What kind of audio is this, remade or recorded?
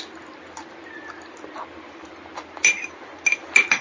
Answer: recorded